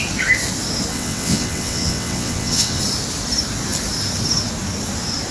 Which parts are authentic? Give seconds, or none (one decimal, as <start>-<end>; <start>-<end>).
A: 0.0-0.9; 2.8-5.3